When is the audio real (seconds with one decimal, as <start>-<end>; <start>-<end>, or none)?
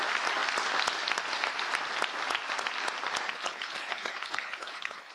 0.0-3.3